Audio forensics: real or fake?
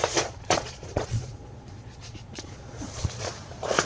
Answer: fake